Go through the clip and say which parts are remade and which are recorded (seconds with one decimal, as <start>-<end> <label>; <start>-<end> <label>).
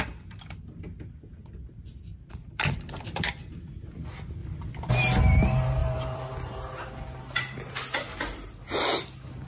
0.0-2.1 recorded; 2.1-3.7 remade; 3.7-4.4 recorded; 4.4-4.9 remade; 4.9-5.8 recorded; 5.8-6.5 remade; 6.5-9.5 recorded